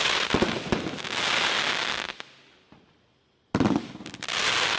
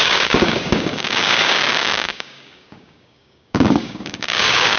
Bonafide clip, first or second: first